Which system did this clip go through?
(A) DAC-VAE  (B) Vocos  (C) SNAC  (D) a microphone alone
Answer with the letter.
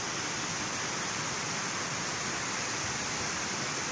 D